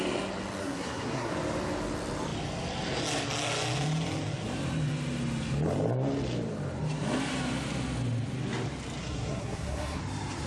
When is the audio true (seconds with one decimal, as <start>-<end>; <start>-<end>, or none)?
0.0-0.6; 1.3-9.0; 10.0-10.5